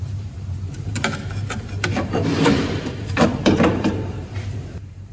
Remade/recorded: remade